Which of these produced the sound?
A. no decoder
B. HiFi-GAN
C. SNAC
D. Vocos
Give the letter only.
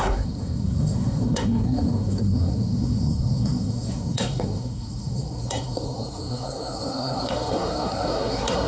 C